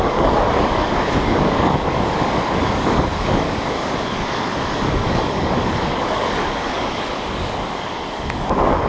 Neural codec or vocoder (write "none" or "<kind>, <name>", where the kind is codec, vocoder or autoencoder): codec, DAC